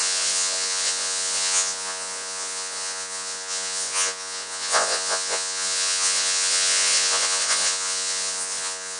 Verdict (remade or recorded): remade